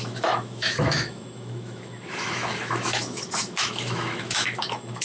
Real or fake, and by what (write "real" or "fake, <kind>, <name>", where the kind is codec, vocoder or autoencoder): fake, autoencoder, DAC-VAE